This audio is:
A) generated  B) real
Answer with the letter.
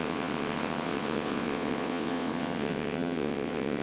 A